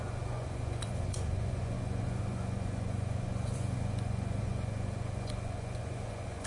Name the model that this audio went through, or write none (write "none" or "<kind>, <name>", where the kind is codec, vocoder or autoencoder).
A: vocoder, Vocos